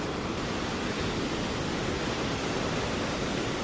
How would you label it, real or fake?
real